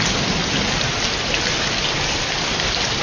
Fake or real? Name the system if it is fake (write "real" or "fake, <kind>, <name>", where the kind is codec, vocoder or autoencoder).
real